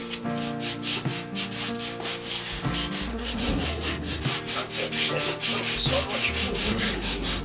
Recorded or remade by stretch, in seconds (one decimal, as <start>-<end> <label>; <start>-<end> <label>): 0.0-3.1 recorded; 3.1-4.2 remade; 4.2-6.6 recorded; 6.6-7.4 remade